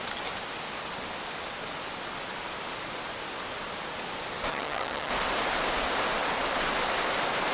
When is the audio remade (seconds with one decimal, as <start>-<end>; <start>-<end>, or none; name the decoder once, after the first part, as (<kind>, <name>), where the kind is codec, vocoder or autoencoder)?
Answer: 4.5-5.1 (vocoder, HiFi-GAN)